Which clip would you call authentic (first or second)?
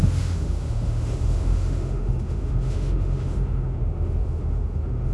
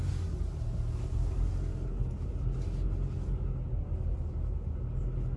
second